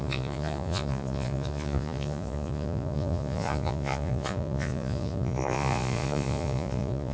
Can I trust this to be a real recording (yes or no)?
no